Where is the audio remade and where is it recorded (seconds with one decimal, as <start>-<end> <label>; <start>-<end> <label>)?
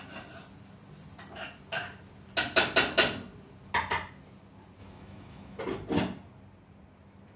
0.0-4.8 recorded; 4.8-5.6 remade; 5.6-7.4 recorded